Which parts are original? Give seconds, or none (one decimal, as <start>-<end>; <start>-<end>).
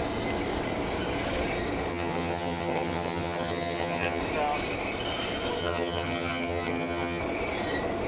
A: 0.0-1.9; 4.2-5.6; 7.2-8.1